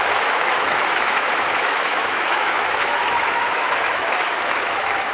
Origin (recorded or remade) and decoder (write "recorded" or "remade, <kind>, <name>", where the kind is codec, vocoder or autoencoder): remade, autoencoder, DAC-VAE